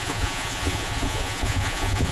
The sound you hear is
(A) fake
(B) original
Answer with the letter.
A